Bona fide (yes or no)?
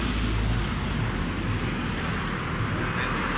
yes